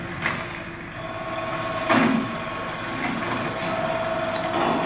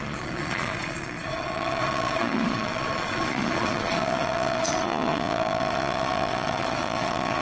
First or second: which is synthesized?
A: second